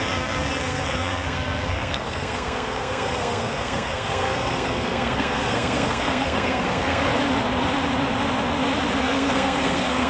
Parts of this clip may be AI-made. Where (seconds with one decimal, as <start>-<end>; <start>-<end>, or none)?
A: 0.0-7.1; 9.0-10.1